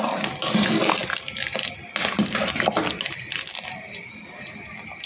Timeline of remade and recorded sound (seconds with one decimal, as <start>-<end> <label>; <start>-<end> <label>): 0.0-5.1 recorded